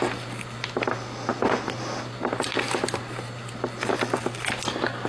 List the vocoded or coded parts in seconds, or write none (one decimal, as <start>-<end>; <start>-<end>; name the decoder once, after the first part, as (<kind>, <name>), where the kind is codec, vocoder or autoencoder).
none